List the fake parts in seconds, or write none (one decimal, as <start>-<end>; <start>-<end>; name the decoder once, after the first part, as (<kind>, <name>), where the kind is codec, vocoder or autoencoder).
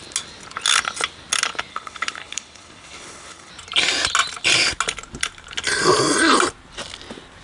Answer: 1.7-3.5 (codec, HILCodec)